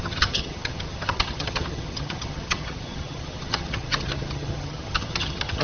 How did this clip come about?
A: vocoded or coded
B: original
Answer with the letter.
A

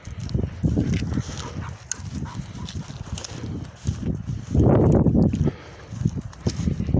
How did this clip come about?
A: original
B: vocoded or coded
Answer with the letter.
A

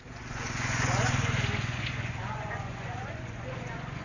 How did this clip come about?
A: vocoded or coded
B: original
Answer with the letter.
A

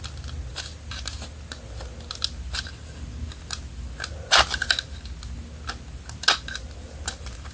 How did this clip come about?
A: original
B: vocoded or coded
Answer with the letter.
A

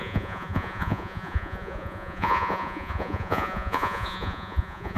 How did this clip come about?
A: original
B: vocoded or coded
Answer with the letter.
B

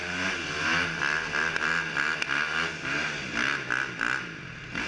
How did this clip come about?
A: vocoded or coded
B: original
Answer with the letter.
B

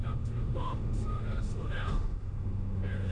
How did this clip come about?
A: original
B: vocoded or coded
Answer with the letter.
B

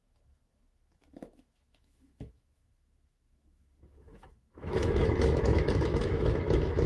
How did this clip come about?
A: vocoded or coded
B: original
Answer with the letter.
A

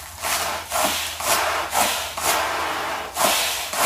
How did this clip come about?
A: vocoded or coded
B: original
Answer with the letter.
B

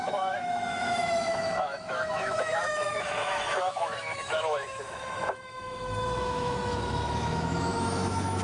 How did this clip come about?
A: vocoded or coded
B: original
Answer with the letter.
A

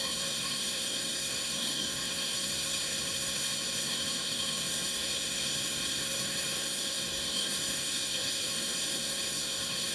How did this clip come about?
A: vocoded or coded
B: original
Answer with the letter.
A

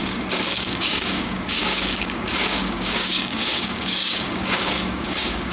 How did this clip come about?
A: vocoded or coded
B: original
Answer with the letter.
A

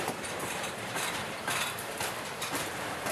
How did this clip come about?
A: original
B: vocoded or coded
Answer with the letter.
B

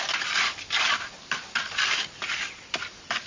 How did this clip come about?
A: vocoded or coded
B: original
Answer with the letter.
B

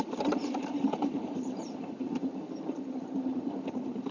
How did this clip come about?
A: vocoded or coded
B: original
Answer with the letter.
A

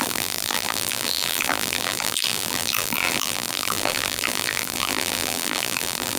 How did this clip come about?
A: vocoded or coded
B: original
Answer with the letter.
A